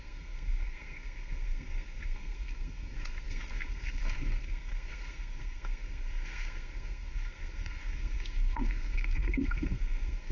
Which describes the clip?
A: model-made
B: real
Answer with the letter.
A